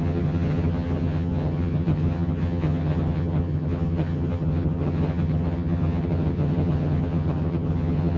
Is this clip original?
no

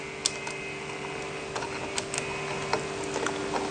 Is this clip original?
yes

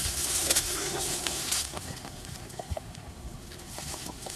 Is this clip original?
no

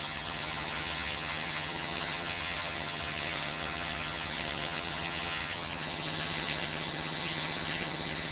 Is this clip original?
no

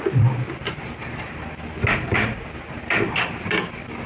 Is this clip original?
no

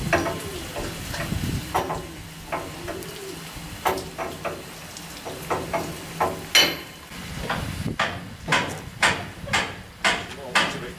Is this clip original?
yes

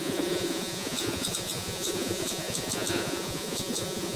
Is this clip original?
no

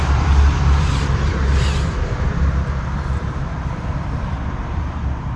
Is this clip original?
no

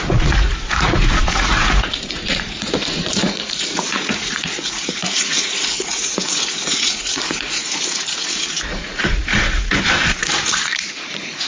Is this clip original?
no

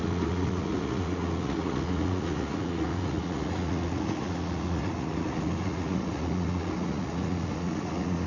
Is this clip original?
no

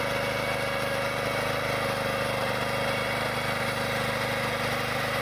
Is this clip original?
yes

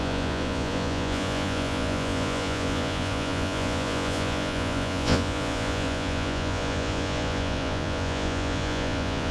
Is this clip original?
no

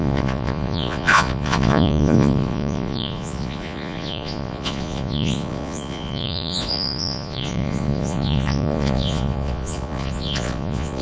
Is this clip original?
no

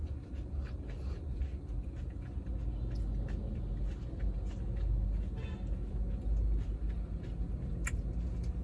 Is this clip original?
yes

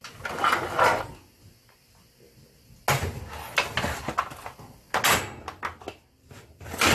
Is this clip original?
yes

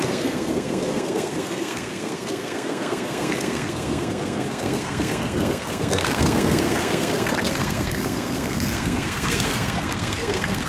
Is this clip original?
no